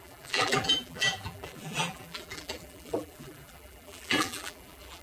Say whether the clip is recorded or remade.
remade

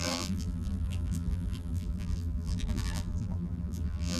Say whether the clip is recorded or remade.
remade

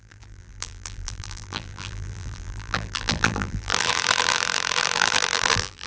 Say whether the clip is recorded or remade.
remade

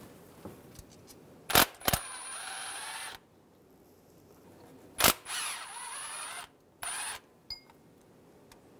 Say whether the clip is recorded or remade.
recorded